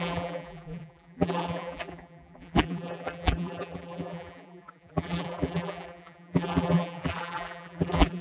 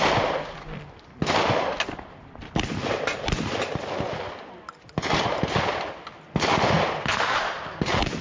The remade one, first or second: first